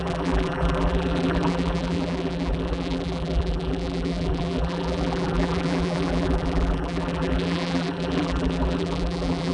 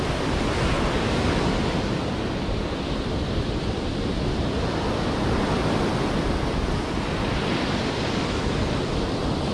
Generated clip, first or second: first